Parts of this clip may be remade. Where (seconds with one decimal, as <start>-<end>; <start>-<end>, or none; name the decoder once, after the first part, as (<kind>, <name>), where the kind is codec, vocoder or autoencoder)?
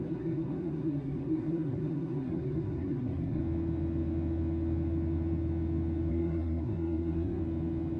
0.0-3.4 (codec, SNAC); 6.1-7.4